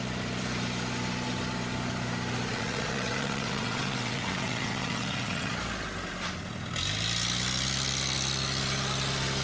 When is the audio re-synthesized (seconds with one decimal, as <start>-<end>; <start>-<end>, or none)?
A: 2.5-5.5

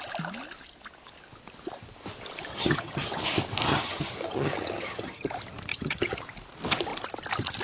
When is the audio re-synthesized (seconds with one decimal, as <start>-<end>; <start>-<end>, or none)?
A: 2.5-3.3; 3.7-5.3; 5.7-6.2

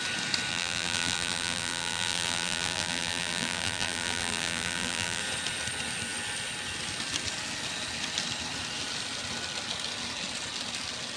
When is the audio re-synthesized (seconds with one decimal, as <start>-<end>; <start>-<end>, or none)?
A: 0.5-5.2

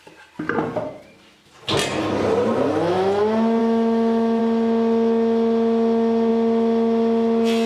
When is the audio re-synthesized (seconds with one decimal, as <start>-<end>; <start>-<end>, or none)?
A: 2.7-3.2; 3.6-4.4

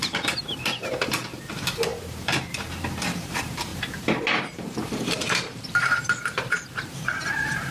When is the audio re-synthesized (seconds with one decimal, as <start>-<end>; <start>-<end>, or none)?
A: 0.0-7.7